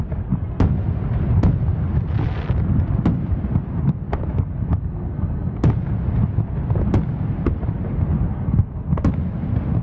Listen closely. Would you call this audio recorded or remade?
recorded